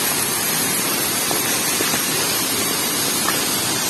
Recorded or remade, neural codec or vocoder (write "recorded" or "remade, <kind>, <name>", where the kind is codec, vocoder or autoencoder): recorded